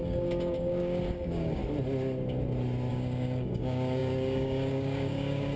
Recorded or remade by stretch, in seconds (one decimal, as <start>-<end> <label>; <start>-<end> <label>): 0.0-1.6 remade; 1.6-2.9 recorded; 2.9-5.6 remade